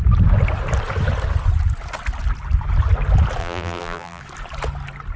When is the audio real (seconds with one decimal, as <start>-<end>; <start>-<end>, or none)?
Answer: 0.0-3.4; 4.2-5.2